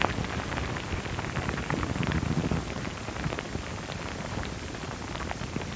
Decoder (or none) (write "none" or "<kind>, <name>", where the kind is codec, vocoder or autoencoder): none